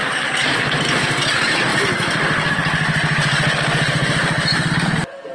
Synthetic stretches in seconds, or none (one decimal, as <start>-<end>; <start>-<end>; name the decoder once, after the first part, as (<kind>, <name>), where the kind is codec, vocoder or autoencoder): none